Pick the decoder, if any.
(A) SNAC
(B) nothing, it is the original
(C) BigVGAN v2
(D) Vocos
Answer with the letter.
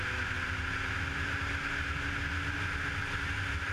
B